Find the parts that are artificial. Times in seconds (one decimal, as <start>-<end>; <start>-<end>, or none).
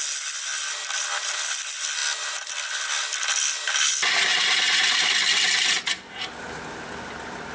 4.3-5.1